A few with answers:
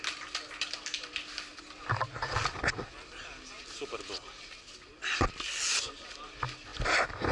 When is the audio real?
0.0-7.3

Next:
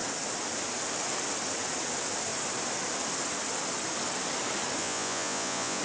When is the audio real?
0.0-4.8

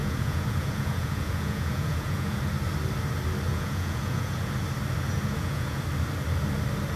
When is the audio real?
2.4-3.5; 4.5-5.1; 5.8-7.0

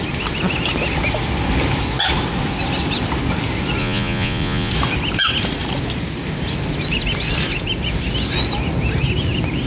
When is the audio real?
0.0-3.8; 4.7-9.7